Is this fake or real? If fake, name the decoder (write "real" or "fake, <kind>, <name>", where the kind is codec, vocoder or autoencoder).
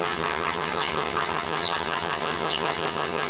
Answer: fake, vocoder, HiFi-GAN